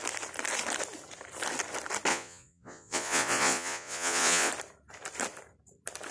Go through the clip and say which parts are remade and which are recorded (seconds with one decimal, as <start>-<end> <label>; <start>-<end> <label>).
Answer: 0.0-2.1 recorded; 2.1-4.5 remade; 4.5-6.1 recorded